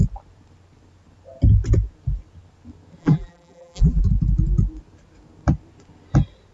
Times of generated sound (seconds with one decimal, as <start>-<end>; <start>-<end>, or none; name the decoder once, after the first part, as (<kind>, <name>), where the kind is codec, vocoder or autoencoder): 3.0-4.0 (vocoder, BigVGAN v2)